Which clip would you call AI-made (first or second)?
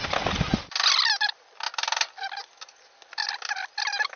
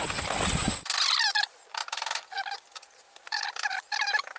second